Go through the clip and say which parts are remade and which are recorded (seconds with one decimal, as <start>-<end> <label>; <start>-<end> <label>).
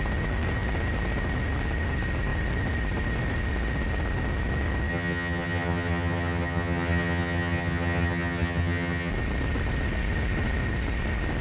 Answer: 0.0-4.9 recorded; 4.9-9.1 remade; 9.1-11.4 recorded